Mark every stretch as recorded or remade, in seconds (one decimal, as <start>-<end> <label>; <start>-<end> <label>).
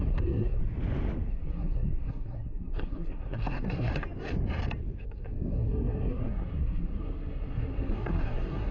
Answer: 0.0-0.6 remade; 0.6-1.3 recorded; 1.3-3.9 remade; 3.9-5.0 recorded; 5.0-8.7 remade